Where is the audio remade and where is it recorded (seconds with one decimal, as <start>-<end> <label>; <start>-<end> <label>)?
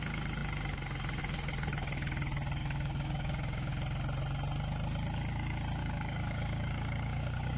0.0-2.6 recorded; 2.6-3.7 remade; 3.7-5.8 recorded; 5.8-7.6 remade